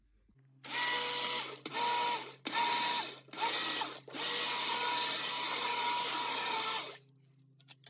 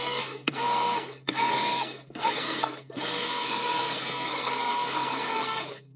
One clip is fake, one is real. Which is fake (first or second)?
second